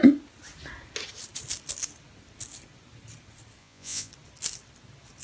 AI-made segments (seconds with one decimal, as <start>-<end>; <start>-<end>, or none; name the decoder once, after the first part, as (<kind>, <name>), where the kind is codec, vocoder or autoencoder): 3.6-4.1 (vocoder, Vocos)